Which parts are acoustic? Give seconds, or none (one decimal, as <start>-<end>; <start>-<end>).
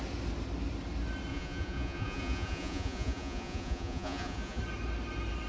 0.0-1.3; 4.6-5.5